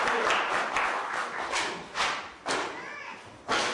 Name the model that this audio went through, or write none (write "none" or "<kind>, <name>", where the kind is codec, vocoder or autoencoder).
none